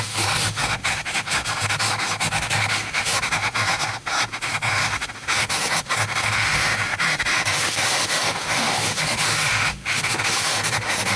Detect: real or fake fake